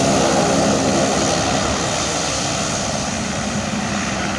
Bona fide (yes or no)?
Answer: yes